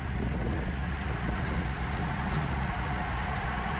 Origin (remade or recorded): remade